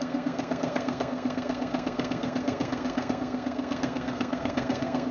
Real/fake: fake